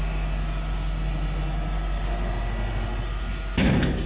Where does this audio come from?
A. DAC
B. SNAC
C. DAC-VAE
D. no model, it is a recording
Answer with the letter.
D